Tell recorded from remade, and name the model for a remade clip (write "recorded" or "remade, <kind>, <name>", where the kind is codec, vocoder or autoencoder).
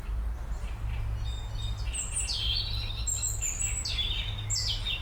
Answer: recorded